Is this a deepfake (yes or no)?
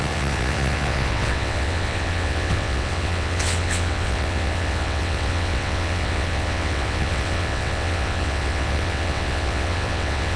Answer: yes